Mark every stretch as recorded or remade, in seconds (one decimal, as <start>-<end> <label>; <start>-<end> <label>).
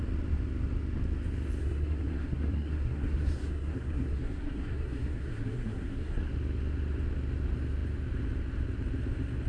0.0-1.6 recorded; 1.6-6.3 remade; 6.3-9.5 recorded